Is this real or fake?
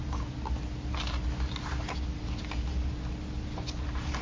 real